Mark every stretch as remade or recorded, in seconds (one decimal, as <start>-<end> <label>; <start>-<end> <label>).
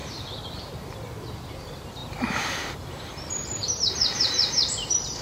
0.0-0.6 remade; 0.6-2.0 recorded; 2.0-5.2 remade